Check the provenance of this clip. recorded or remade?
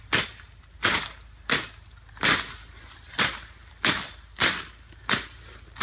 recorded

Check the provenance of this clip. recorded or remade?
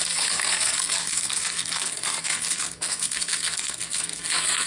remade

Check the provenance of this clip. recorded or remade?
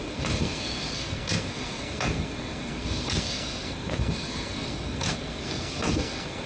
remade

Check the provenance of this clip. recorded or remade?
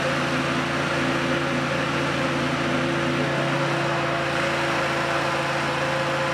recorded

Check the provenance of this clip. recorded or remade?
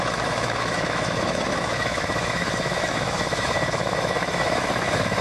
remade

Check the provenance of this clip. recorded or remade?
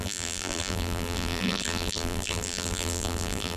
remade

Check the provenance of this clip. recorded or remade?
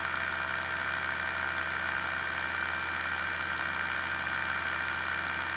recorded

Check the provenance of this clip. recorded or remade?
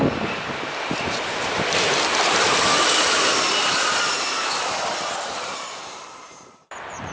remade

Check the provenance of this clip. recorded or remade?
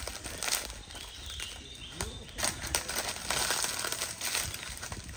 recorded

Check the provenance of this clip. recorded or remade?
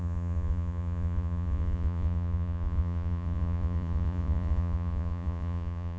remade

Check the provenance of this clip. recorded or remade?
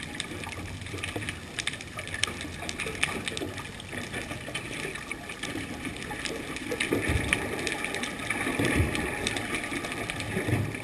recorded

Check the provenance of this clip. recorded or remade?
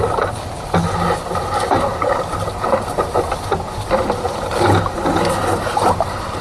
recorded